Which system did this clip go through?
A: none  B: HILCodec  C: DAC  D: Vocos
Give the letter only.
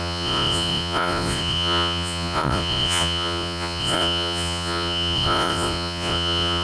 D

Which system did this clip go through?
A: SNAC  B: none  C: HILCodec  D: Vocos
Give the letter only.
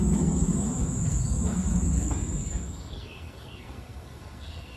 A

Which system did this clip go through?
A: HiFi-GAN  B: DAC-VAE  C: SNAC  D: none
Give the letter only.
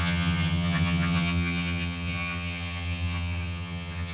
A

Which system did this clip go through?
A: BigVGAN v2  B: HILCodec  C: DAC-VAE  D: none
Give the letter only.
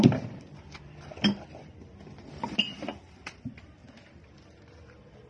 A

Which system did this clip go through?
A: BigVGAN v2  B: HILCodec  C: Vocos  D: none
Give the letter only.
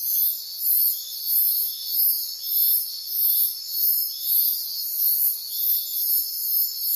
D